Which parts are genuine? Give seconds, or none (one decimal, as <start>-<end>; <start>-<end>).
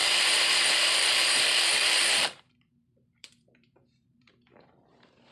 none